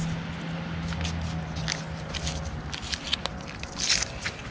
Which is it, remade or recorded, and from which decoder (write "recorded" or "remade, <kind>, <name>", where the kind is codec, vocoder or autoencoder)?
recorded